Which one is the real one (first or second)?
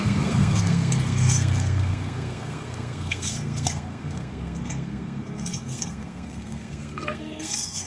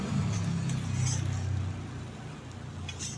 second